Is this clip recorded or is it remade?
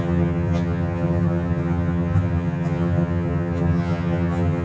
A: remade